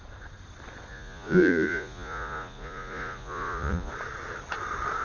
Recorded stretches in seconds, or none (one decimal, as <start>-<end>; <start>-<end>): 0.0-0.9; 3.9-5.0